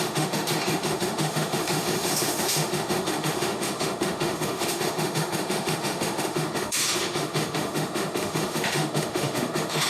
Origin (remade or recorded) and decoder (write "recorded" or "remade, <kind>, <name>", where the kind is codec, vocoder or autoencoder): remade, autoencoder, DAC-VAE